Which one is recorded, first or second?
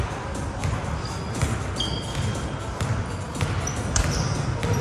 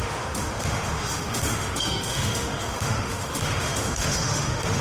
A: first